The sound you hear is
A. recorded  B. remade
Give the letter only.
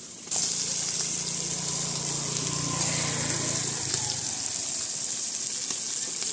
A